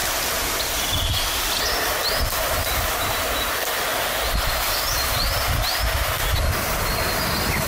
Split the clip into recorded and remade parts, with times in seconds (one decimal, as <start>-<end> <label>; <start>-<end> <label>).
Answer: 0.0-7.7 remade